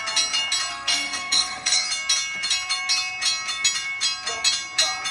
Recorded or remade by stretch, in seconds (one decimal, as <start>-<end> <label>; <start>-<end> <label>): 0.0-0.7 recorded; 0.7-1.9 remade; 1.9-5.1 recorded